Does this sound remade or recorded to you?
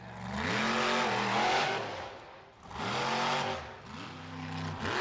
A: recorded